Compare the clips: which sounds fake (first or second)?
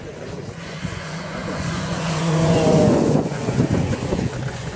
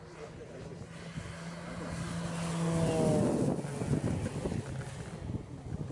first